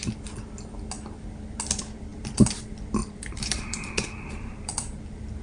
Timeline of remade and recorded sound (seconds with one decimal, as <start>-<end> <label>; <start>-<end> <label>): 0.0-3.0 recorded; 3.0-5.0 remade; 5.0-5.4 recorded